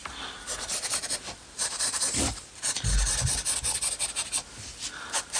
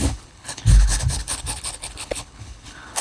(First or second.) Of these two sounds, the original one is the first